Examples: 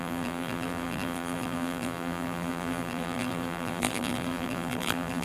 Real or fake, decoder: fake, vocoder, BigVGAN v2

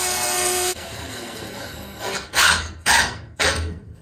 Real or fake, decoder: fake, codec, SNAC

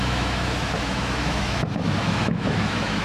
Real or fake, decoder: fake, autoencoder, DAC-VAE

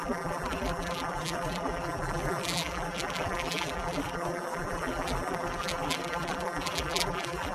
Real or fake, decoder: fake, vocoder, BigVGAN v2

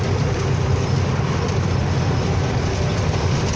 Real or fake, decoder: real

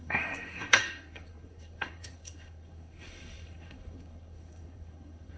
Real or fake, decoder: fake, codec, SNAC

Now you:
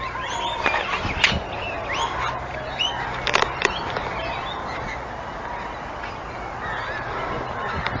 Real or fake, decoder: real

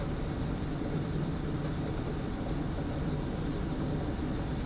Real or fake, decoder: real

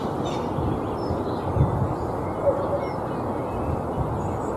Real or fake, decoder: real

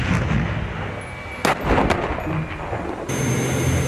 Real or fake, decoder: real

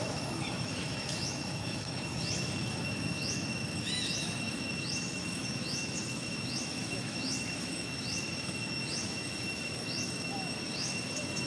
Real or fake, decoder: fake, autoencoder, DAC-VAE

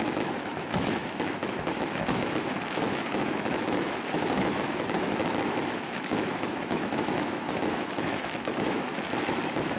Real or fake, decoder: fake, autoencoder, DAC-VAE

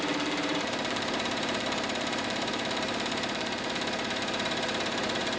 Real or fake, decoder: fake, vocoder, BigVGAN v2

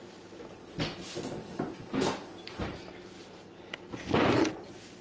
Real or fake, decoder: real